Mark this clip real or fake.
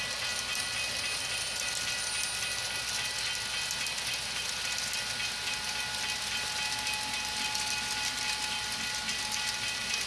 real